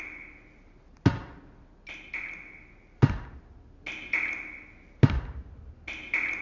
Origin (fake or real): real